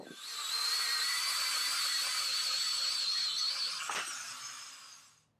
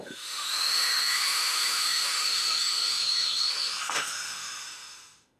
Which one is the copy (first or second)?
second